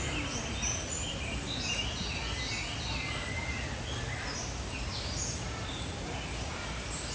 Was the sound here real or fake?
real